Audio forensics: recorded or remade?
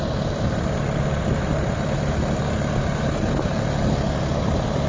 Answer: recorded